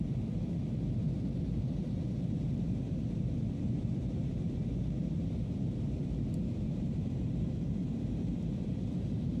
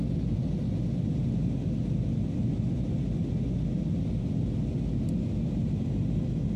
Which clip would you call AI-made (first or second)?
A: first